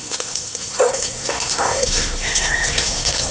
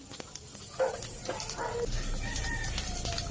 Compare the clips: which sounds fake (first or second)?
first